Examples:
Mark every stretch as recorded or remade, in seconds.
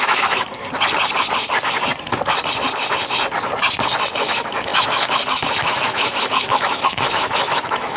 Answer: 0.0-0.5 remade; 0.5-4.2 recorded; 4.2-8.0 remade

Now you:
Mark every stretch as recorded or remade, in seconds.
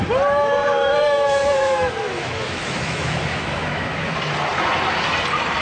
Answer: 0.0-0.8 recorded; 0.8-4.2 remade; 4.2-5.6 recorded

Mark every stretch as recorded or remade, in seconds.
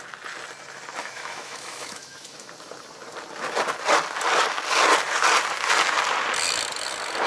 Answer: 0.0-1.0 recorded; 1.0-2.5 remade; 2.5-7.3 recorded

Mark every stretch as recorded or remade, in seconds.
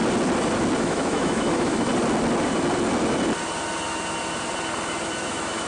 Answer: 0.0-0.8 recorded; 0.8-1.9 remade; 1.9-5.3 recorded; 5.3-5.7 remade